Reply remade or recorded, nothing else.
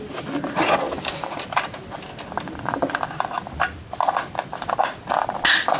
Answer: recorded